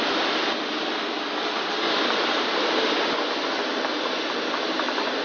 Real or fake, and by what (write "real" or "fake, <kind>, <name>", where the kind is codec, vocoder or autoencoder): real